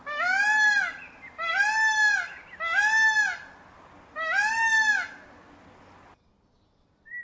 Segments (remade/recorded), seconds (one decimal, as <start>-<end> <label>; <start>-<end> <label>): 0.0-7.2 recorded